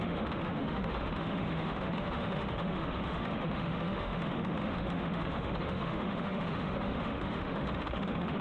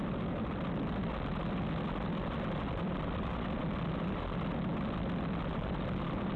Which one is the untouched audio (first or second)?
second